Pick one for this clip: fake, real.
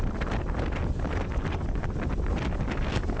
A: real